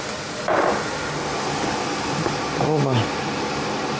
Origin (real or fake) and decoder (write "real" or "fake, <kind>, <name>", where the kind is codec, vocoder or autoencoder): real